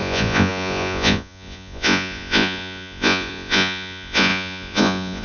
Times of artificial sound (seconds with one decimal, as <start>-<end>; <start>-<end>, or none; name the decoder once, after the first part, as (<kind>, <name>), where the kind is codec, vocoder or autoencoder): 0.0-5.2 (vocoder, Vocos)